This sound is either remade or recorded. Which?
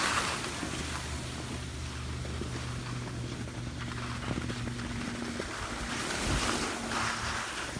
recorded